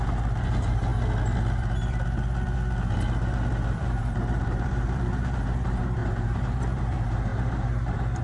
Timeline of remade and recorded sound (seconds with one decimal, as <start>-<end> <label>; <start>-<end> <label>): 0.0-0.9 remade; 0.9-3.7 recorded; 3.7-8.2 remade